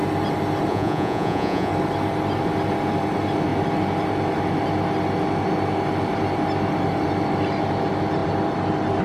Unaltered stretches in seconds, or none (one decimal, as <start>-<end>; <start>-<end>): 0.0-0.7; 1.7-9.0